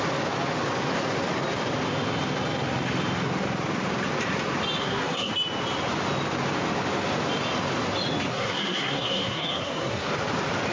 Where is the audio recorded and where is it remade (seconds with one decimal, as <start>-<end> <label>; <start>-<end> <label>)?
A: 0.0-4.8 recorded; 4.8-5.3 remade; 5.3-8.3 recorded; 8.3-10.1 remade; 10.1-10.7 recorded